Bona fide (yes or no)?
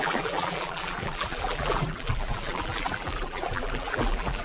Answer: no